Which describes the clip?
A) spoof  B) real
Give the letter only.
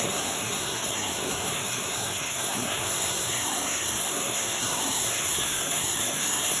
A